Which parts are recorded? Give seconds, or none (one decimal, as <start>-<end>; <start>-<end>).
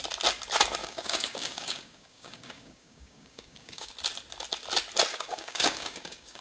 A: 0.0-0.8; 3.9-5.1